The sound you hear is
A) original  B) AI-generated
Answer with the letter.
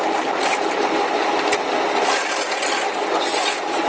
A